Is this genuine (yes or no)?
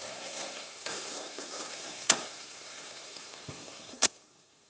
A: no